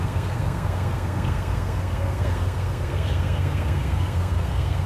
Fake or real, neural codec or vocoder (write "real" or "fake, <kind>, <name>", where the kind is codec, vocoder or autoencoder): fake, codec, SNAC